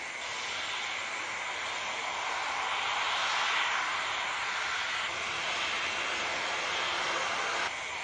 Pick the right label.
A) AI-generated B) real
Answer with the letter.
B